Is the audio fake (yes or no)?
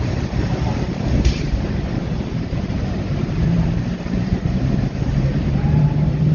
yes